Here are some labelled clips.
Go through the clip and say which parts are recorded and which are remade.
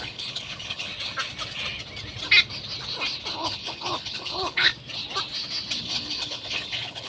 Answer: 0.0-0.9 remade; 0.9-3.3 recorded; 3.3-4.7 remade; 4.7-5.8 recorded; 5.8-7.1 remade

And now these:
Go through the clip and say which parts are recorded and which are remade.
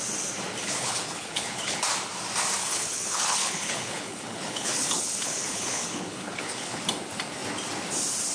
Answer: 0.0-0.6 recorded; 0.6-1.8 remade; 1.8-2.6 recorded; 2.6-6.8 remade; 6.8-8.3 recorded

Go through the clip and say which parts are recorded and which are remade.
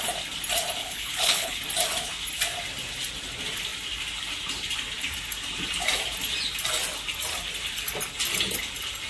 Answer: 0.0-0.8 recorded; 0.8-1.6 remade; 1.6-9.1 recorded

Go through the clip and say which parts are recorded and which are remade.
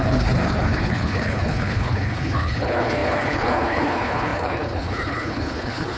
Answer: 0.0-6.0 remade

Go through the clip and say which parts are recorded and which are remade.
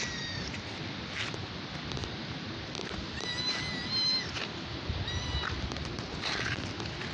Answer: 0.0-7.1 recorded